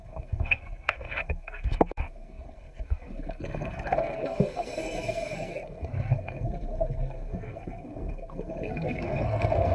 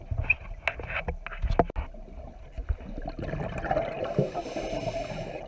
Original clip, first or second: second